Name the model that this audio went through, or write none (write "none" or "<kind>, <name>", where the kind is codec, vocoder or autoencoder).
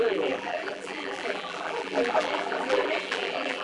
vocoder, BigVGAN v2